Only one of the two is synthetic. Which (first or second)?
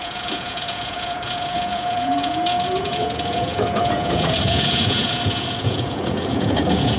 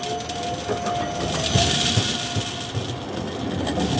first